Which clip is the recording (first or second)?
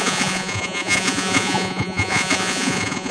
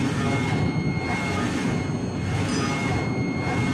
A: second